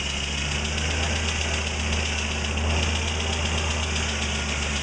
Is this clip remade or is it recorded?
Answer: recorded